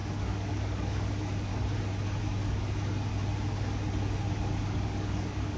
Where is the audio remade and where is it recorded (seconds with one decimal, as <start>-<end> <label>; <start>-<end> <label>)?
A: 0.0-1.5 remade; 1.5-2.2 recorded; 2.2-3.1 remade; 3.1-4.3 recorded; 4.3-5.6 remade